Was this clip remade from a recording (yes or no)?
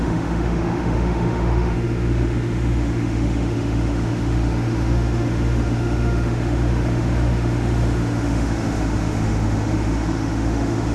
yes